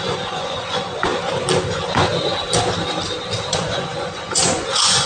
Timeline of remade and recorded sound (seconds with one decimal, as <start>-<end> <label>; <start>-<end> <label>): 0.0-1.1 remade; 1.1-1.7 recorded; 1.7-2.1 remade; 2.1-3.5 recorded; 3.5-5.1 remade